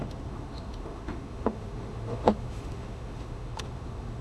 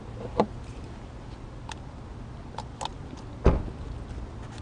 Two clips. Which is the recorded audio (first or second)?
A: second